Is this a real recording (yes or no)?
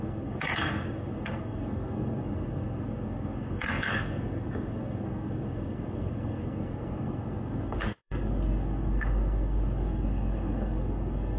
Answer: no